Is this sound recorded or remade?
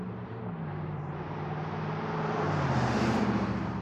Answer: remade